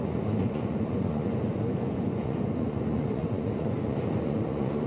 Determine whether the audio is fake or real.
fake